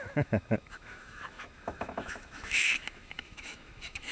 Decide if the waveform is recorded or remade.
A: remade